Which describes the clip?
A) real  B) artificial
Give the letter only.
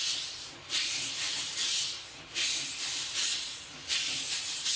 A